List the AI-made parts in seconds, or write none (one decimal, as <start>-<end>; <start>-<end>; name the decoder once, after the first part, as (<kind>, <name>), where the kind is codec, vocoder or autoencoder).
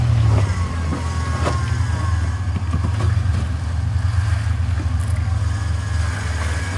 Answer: none